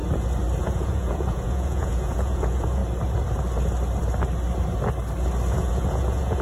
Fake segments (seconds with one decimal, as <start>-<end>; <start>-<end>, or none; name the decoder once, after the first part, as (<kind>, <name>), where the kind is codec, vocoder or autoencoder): 0.6-2.8 (vocoder, Vocos); 5.5-6.4